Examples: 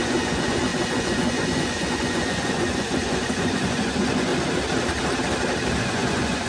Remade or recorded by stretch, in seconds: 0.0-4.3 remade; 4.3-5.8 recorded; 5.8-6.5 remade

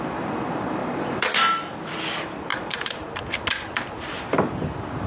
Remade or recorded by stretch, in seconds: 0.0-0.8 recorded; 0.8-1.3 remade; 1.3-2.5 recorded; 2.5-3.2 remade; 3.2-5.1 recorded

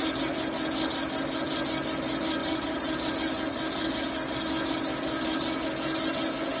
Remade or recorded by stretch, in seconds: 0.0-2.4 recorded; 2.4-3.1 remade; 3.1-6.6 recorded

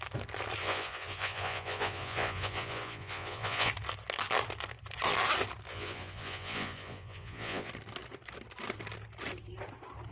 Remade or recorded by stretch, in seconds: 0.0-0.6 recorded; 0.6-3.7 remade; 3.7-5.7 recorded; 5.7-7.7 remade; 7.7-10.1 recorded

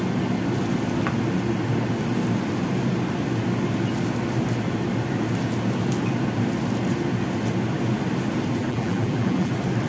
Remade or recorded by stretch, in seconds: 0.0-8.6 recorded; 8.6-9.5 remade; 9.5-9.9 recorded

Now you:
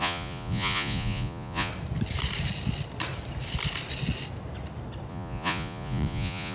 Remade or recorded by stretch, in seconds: 0.0-1.7 remade; 1.7-5.1 recorded; 5.1-6.5 remade

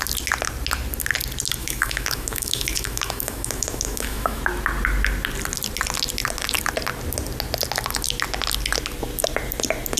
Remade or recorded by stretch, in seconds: 0.0-1.6 recorded; 1.6-4.4 remade; 4.4-10.0 recorded

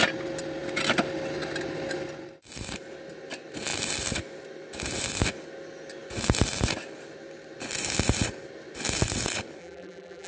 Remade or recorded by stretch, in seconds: 0.0-9.6 recorded; 9.6-10.3 remade